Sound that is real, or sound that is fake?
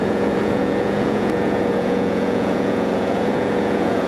fake